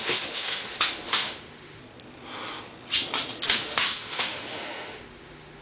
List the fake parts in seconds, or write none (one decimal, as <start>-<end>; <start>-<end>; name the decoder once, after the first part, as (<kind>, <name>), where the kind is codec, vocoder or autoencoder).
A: 0.0-1.8 (autoencoder, DAC-VAE); 3.5-5.6